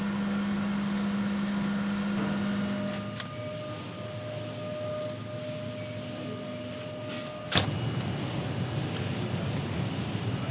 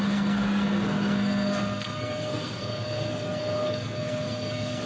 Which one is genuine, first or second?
first